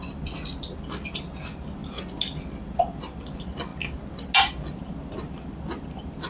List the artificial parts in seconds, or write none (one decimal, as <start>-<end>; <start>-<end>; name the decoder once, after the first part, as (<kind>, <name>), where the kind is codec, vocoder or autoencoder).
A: none